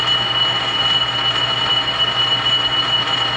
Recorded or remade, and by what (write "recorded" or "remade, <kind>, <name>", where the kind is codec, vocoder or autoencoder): recorded